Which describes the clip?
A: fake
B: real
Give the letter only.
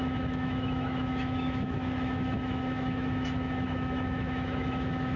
A